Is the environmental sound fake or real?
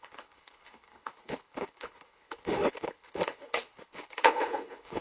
fake